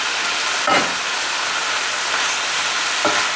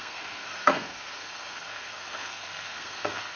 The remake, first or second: second